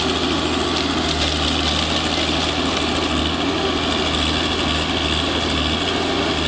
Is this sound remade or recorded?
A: recorded